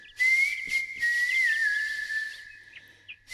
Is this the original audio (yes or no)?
yes